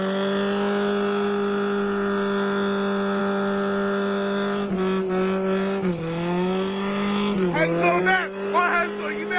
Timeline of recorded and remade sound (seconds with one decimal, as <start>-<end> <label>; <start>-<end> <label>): 0.0-9.4 recorded